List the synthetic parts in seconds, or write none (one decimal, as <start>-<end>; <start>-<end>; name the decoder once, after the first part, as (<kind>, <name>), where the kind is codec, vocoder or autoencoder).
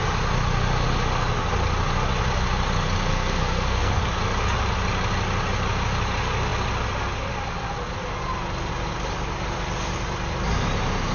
3.1-4.0 (codec, SNAC)